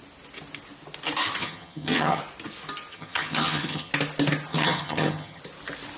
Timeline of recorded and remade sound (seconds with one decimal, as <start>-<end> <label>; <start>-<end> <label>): 0.0-1.4 recorded; 1.4-2.2 remade; 2.2-2.9 recorded; 2.9-3.9 remade; 3.9-4.5 recorded; 4.5-5.4 remade; 5.4-6.0 recorded